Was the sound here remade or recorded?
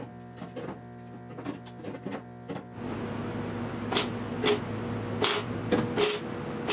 recorded